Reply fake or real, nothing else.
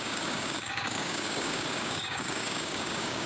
fake